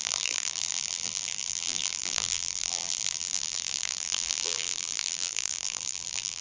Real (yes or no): no